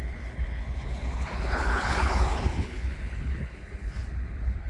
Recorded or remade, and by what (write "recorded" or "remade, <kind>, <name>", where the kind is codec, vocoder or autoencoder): remade, codec, HILCodec